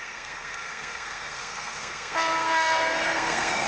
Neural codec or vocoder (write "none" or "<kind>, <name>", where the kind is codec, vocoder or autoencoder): codec, SNAC